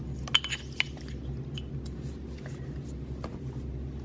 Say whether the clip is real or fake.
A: real